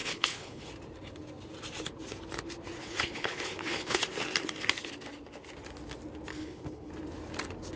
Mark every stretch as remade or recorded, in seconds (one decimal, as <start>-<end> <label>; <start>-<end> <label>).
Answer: 0.0-0.7 remade; 0.7-2.8 recorded; 2.8-4.0 remade; 4.0-6.3 recorded; 6.3-6.9 remade; 6.9-7.8 recorded